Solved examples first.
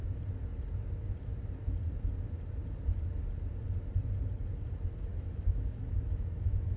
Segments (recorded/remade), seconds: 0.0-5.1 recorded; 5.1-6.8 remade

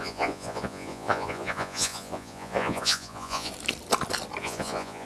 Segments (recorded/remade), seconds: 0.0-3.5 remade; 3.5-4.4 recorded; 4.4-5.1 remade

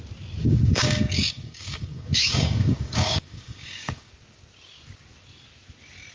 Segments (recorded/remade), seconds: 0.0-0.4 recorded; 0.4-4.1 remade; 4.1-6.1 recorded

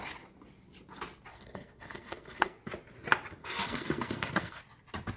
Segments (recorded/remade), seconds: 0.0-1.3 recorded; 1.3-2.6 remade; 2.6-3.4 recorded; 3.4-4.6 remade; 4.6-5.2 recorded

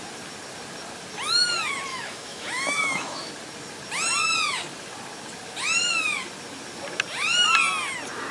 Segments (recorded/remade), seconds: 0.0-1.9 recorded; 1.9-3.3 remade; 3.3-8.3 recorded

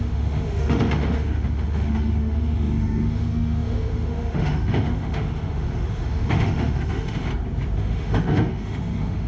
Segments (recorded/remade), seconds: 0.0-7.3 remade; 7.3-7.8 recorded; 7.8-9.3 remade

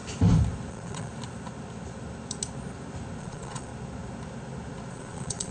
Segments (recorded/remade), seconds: 0.0-0.7 recorded; 0.7-1.1 remade; 1.1-3.2 recorded; 3.2-3.7 remade; 3.7-4.9 recorded; 4.9-5.5 remade